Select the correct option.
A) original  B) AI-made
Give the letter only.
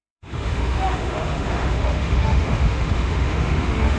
B